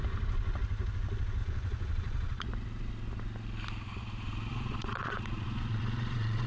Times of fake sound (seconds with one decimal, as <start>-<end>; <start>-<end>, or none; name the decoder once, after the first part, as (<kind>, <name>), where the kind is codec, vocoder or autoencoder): 1.4-2.4 (vocoder, Vocos); 4.5-6.5